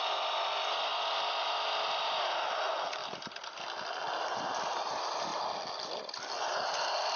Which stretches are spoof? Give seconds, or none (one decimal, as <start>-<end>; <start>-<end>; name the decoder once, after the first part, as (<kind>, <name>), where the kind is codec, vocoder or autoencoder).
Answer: 5.3-6.1 (vocoder, BigVGAN v2)